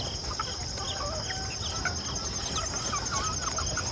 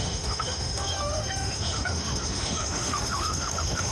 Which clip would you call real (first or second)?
first